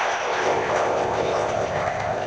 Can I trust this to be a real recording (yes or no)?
no